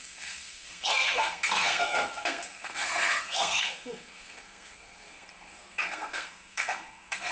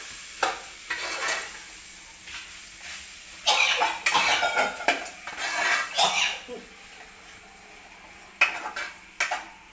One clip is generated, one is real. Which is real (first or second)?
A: second